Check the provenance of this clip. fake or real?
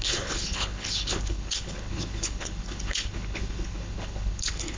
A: fake